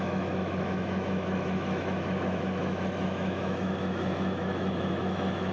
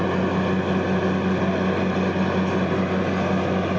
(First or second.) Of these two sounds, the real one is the second